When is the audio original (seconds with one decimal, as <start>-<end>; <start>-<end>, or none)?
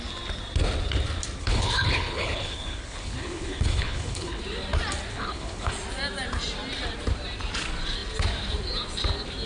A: 0.0-1.4; 4.4-5.1; 5.7-9.5